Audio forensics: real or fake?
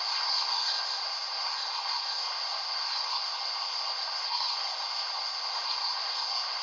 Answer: fake